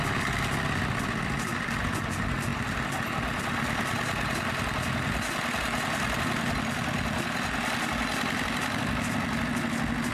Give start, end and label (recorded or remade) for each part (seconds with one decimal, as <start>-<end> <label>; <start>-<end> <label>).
0.0-10.1 recorded

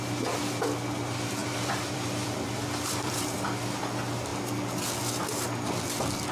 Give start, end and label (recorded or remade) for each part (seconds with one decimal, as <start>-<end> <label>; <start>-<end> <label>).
0.0-1.4 recorded; 1.4-3.2 remade; 3.2-6.3 recorded

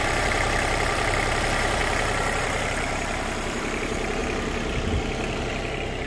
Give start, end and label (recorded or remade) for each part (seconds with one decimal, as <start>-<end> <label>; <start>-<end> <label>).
0.0-1.8 remade; 1.8-2.4 recorded; 2.4-4.2 remade; 4.2-5.5 recorded; 5.5-6.1 remade